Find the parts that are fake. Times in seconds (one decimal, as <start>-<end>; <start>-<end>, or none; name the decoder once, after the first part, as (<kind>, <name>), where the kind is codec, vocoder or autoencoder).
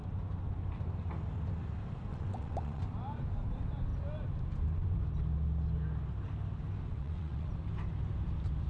2.1-2.8 (vocoder, WaveNeXt); 6.9-7.5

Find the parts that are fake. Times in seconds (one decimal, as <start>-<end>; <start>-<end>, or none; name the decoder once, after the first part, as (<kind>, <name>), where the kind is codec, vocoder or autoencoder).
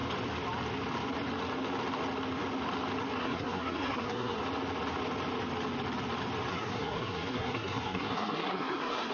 3.2-4.4 (codec, SNAC); 6.5-9.1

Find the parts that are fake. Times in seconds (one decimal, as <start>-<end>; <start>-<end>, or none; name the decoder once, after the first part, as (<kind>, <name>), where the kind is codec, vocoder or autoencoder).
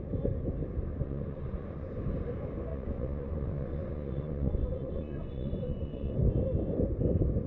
0.9-1.9 (vocoder, Vocos); 2.7-6.1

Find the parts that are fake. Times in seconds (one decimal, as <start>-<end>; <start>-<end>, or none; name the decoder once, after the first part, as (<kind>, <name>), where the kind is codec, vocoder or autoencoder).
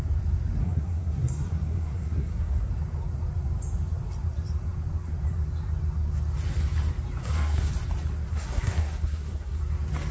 0.6-2.7 (codec, SNAC); 7.2-7.7; 8.3-9.6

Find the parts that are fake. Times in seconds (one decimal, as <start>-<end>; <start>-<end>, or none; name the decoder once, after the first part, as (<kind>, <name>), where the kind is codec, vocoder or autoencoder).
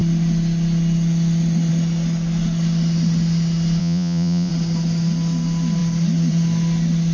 3.8-4.5 (vocoder, Vocos)